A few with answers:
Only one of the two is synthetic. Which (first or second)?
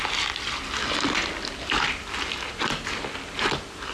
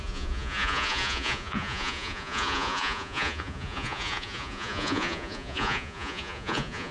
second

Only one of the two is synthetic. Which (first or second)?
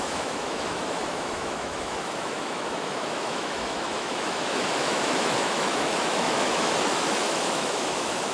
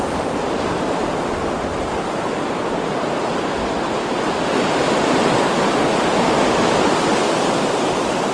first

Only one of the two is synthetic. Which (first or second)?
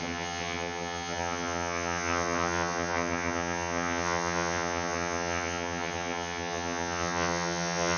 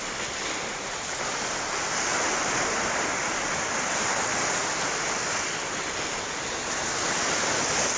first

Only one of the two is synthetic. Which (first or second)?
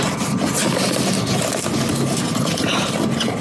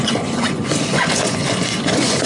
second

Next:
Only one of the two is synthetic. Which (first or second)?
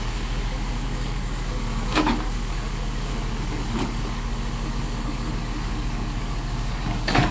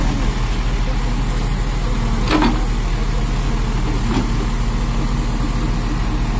first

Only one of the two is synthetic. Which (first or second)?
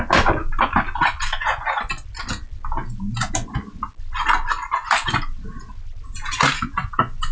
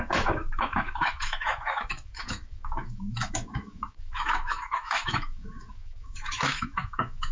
second